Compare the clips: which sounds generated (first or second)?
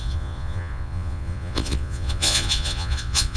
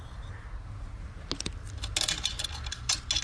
first